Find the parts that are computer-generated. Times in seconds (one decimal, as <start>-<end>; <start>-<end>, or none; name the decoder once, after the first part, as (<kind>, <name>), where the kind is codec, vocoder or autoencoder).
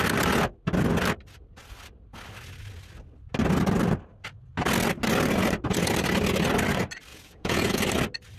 7.1-7.8 (vocoder, Vocos)